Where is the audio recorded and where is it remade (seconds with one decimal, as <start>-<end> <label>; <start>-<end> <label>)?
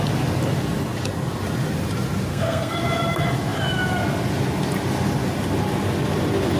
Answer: 0.0-2.3 recorded; 2.3-2.8 remade; 2.8-6.6 recorded